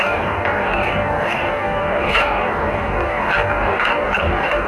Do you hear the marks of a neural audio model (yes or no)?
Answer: yes